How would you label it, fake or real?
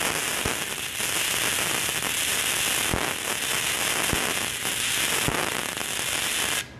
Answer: real